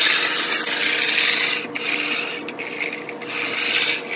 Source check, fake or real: real